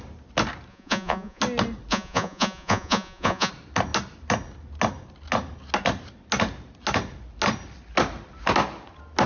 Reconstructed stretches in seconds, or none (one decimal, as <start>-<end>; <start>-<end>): 0.7-1.4; 1.9-3.5